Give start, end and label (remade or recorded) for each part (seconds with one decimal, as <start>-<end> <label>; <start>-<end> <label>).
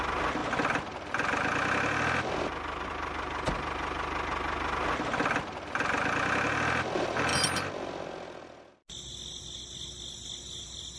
0.0-11.0 recorded